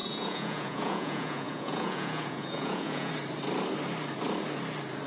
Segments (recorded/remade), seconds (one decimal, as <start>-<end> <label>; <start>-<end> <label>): 0.0-3.1 remade; 3.1-5.1 recorded